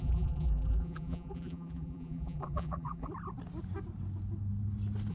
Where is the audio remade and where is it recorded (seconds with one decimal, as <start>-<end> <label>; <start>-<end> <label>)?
0.0-3.1 remade; 3.1-5.1 recorded